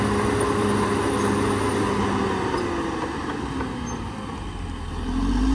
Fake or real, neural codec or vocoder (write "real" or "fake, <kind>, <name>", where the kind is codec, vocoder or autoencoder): real